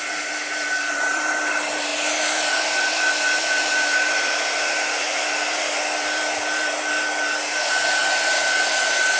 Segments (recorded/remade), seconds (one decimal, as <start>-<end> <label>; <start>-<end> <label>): 0.0-8.0 remade; 8.0-9.2 recorded